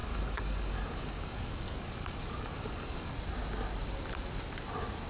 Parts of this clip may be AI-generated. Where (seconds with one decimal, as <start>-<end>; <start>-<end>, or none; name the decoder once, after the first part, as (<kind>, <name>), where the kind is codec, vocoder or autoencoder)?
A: 0.0-3.1 (codec, DAC)